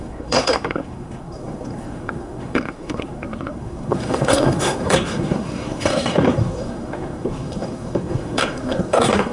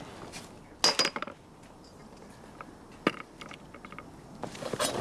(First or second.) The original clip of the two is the second